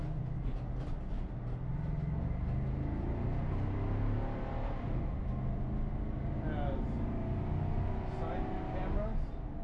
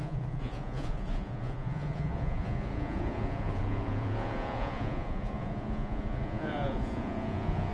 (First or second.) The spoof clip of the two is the second